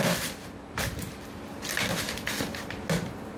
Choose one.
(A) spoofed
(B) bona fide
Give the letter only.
B